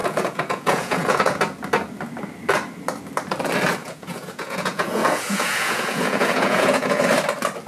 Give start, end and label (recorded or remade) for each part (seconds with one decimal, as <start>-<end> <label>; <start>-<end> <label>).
0.0-1.4 remade; 1.4-3.8 recorded; 3.8-7.0 remade; 7.0-7.7 recorded